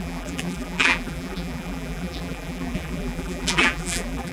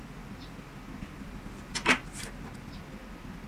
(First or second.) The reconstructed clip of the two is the first